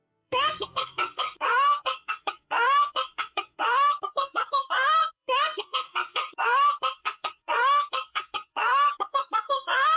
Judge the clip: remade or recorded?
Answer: remade